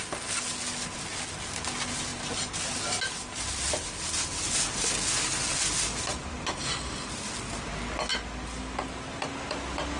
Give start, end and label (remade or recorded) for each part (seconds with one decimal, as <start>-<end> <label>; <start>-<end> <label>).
0.0-10.0 recorded